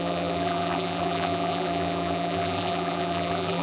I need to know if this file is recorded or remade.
remade